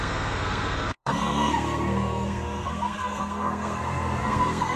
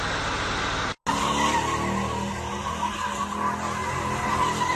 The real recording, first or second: second